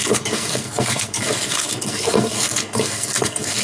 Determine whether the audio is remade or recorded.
remade